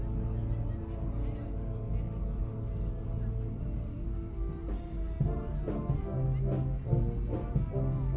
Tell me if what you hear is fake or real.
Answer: real